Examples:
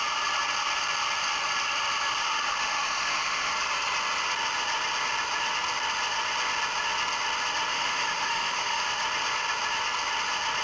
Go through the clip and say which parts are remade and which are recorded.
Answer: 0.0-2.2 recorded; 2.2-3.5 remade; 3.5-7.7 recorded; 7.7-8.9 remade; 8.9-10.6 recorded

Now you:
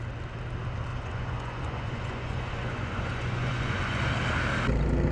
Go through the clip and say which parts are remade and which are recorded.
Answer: 0.0-0.9 recorded; 0.9-4.0 remade; 4.0-5.1 recorded

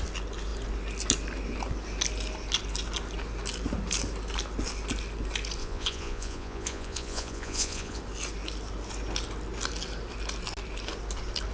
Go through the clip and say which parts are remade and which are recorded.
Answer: 0.0-5.6 recorded; 5.6-8.0 remade; 8.0-11.5 recorded

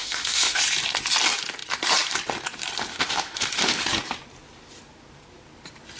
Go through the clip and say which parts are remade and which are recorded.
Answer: 0.0-0.6 remade; 0.6-2.9 recorded; 2.9-3.8 remade; 3.8-6.0 recorded

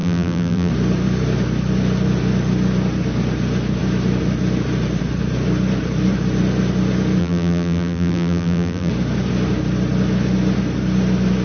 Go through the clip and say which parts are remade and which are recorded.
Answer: 0.0-0.7 remade; 0.7-7.2 recorded; 7.2-8.9 remade; 8.9-11.4 recorded

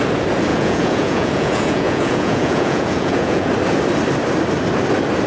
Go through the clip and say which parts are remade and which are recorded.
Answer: 0.0-0.5 recorded; 0.5-3.5 remade; 3.5-5.3 recorded